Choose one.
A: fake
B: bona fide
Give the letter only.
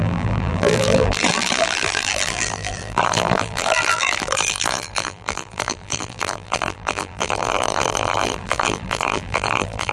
A